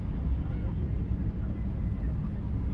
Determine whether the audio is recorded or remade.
recorded